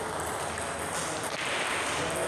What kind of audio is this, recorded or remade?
recorded